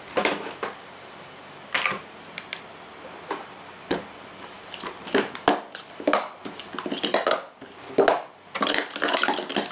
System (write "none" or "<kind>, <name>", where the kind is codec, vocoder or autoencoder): none